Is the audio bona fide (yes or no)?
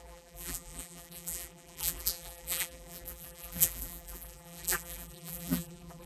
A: no